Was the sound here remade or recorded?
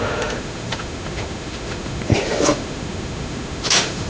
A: remade